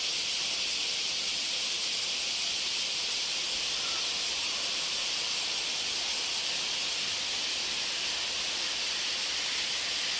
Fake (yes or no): no